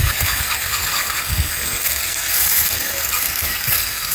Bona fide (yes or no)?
no